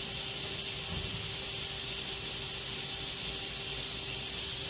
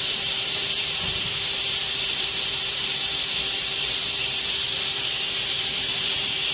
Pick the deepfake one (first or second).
second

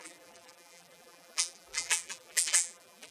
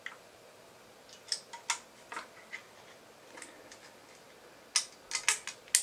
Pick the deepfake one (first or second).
first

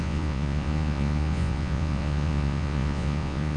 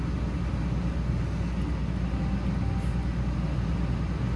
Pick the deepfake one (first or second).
first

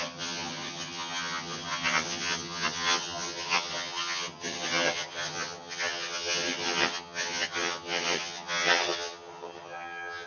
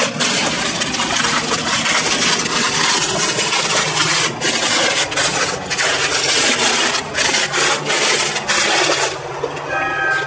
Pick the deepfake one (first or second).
first